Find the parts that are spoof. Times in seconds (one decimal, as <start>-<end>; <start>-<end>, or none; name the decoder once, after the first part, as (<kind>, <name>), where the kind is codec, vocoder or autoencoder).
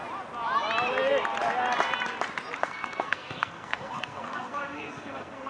2.6-5.5 (codec, SNAC)